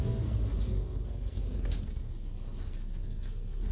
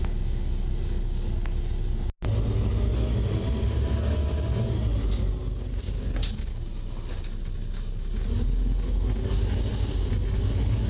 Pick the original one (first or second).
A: second